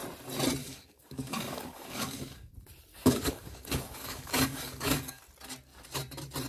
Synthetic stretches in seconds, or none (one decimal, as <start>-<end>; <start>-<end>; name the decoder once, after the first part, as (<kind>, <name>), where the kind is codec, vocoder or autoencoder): 0.6-2.5 (codec, DAC); 2.9-5.2